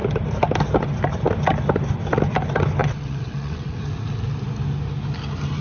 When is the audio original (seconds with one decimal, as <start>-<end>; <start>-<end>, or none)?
0.0-2.8; 3.8-5.6